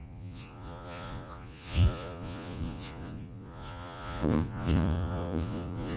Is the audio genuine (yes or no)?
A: no